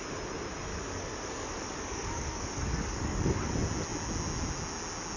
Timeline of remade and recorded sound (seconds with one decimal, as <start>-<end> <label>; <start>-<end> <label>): 0.0-0.7 recorded; 0.7-3.5 remade; 3.5-5.2 recorded